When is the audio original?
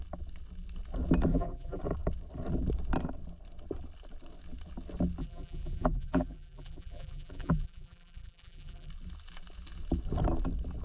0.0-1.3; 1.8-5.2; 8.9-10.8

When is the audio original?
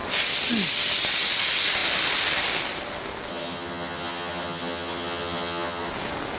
0.0-3.3; 5.9-6.4